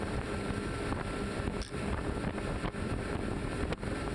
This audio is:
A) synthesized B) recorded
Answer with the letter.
A